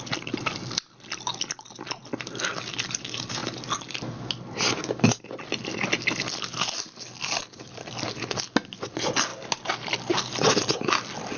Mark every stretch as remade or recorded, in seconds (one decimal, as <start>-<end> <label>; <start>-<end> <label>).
0.0-11.4 recorded